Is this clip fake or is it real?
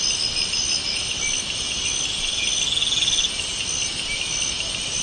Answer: real